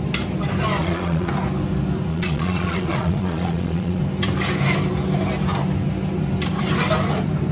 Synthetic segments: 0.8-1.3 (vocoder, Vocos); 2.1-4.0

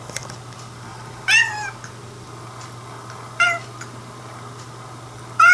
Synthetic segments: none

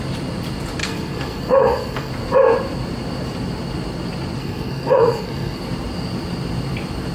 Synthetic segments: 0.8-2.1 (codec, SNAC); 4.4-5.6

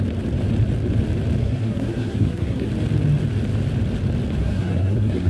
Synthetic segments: 1.4-2.7 (codec, SNAC); 4.4-5.3